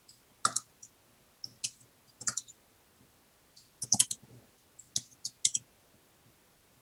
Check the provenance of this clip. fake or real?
real